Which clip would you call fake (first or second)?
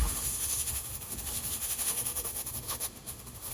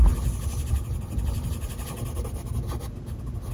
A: first